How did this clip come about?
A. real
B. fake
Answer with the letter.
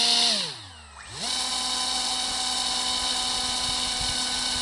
A